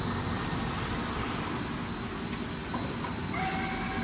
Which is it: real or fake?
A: real